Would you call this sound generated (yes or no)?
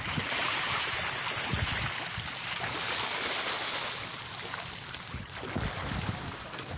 no